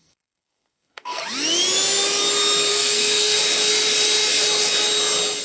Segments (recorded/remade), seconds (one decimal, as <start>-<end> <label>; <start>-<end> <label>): 0.0-1.2 remade; 1.2-2.7 recorded; 2.7-3.4 remade; 3.4-5.4 recorded